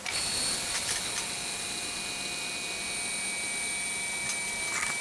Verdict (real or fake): real